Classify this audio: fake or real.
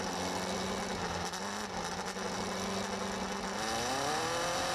real